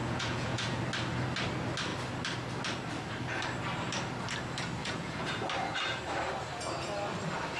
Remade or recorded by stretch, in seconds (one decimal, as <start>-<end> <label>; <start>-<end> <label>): 0.0-0.8 remade; 0.8-4.8 recorded; 4.8-5.3 remade; 5.3-7.6 recorded